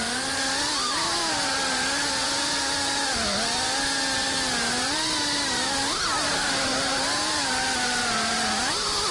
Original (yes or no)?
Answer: yes